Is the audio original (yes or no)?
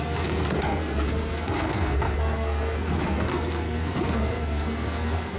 no